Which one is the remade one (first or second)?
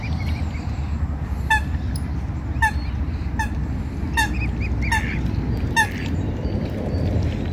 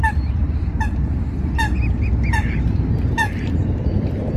second